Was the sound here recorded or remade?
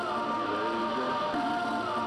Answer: recorded